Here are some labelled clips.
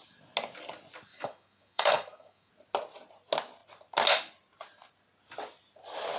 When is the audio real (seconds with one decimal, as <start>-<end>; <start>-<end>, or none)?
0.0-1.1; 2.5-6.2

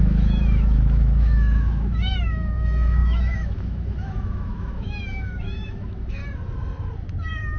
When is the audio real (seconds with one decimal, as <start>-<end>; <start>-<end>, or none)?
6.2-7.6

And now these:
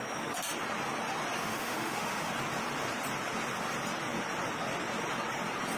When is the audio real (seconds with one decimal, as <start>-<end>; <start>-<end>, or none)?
0.0-1.4; 2.3-5.8

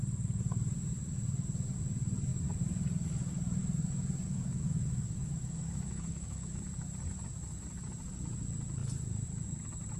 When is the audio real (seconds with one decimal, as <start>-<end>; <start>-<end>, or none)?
0.0-4.3; 6.6-10.0

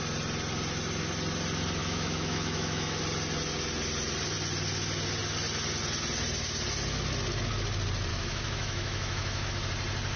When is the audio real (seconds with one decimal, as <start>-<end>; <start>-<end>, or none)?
0.0-1.8; 3.0-8.1; 9.5-10.2

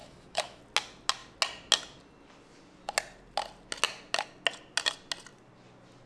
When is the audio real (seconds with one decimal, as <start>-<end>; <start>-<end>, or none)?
0.6-6.1

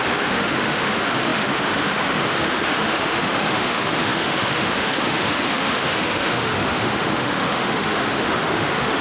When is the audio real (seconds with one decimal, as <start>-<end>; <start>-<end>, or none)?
none